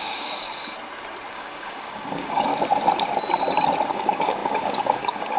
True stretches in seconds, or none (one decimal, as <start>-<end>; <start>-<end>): 0.5-1.3; 2.5-3.9